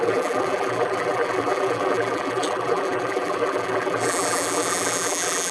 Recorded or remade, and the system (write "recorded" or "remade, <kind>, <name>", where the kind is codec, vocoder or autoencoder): remade, vocoder, BigVGAN v2